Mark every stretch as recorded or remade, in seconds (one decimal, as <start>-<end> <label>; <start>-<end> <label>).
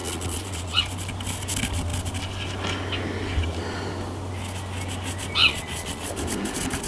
0.0-0.8 remade; 0.8-5.4 recorded; 5.4-6.1 remade; 6.1-6.9 recorded